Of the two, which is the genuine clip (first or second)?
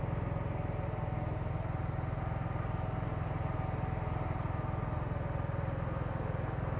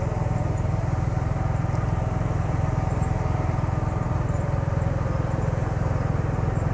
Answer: first